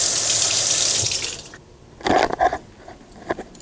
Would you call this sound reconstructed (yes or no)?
yes